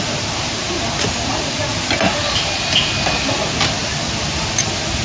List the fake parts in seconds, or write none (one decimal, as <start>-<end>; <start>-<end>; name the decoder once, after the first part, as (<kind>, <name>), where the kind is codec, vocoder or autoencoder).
none